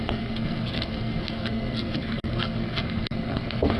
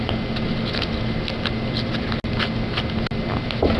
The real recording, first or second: second